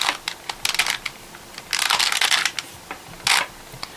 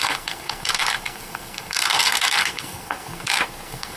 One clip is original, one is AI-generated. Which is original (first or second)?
first